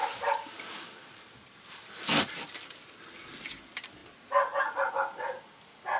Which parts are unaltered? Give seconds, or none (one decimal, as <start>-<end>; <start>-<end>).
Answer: 0.0-6.0